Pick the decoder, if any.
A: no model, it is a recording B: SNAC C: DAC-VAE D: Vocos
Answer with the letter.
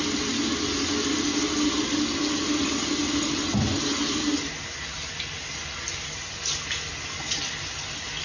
A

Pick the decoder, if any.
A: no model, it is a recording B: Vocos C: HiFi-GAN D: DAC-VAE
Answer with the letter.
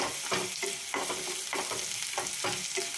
A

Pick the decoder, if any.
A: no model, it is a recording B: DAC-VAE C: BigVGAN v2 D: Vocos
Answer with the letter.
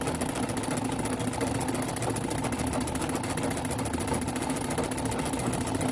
A